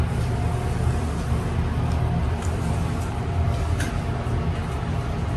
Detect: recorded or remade recorded